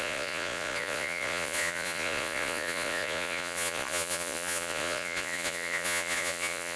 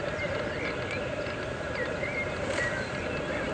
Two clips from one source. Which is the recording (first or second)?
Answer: second